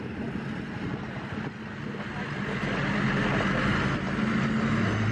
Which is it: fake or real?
real